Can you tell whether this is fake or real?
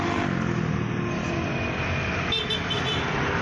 real